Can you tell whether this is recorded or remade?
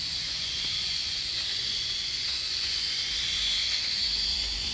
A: remade